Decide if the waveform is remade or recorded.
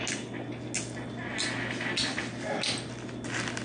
recorded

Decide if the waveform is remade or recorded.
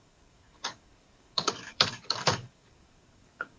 remade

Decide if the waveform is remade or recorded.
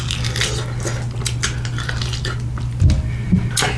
recorded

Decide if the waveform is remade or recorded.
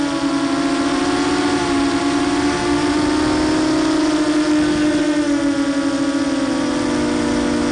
recorded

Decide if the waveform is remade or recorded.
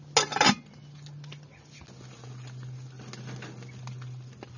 recorded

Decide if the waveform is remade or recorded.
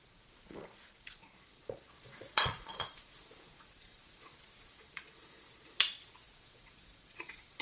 remade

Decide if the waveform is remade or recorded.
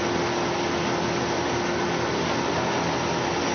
recorded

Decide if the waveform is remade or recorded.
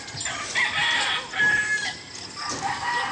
recorded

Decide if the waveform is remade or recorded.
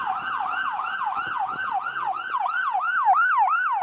recorded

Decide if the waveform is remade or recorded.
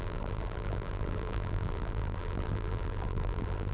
remade